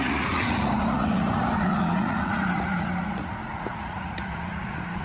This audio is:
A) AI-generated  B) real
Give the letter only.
A